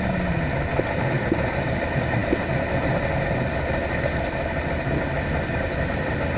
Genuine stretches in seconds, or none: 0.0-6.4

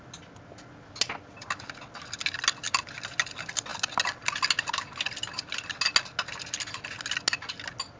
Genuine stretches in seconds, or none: 0.0-8.0